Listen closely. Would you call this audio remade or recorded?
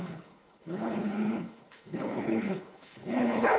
remade